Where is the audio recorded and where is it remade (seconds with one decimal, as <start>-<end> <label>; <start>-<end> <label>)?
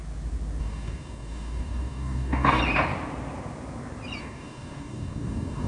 0.0-0.6 recorded; 0.6-2.6 remade; 2.6-4.2 recorded; 4.2-5.7 remade